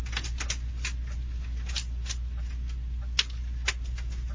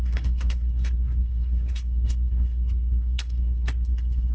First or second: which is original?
first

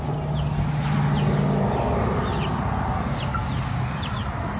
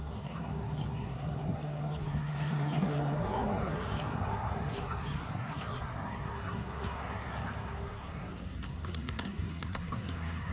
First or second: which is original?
first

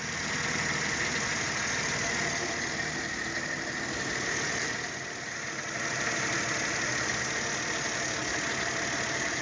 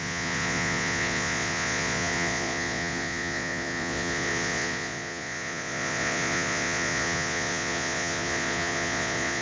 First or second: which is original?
first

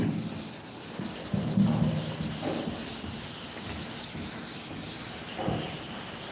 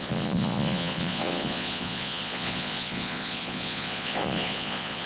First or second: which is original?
first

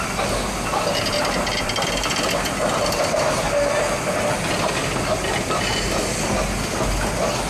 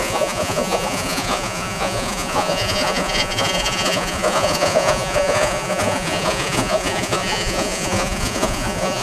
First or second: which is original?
first